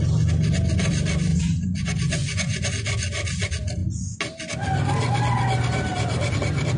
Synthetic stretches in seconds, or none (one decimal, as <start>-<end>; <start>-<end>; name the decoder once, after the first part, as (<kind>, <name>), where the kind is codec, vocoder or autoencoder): 1.3-2.7 (vocoder, Vocos)